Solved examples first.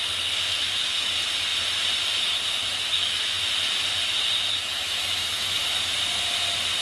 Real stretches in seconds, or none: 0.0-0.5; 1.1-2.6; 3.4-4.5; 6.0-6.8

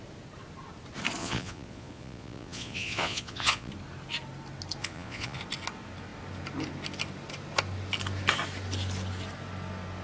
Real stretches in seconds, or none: 0.0-1.2; 3.7-4.8; 5.4-10.0

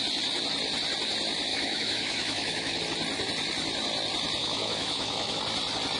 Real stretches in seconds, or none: 0.0-1.5; 2.8-4.4; 5.4-6.0

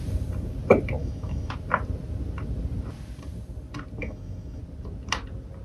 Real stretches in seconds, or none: 0.0-1.0; 1.5-4.0; 4.6-5.6

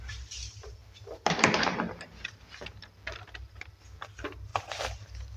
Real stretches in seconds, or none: 0.0-0.8; 2.3-5.4

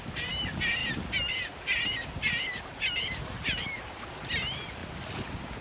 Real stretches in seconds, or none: 0.0-5.6

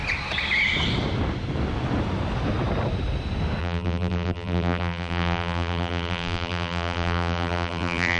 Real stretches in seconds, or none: 0.0-3.6

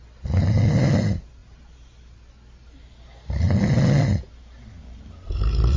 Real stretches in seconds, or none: 0.0-5.8